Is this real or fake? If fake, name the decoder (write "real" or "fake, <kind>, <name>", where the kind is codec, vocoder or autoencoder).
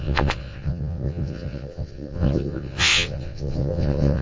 fake, vocoder, WaveNeXt